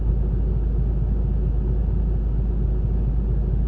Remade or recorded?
recorded